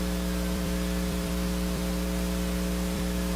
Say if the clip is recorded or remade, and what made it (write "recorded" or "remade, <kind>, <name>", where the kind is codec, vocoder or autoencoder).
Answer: remade, vocoder, BigVGAN v2